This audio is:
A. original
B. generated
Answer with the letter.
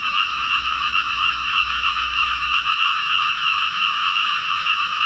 B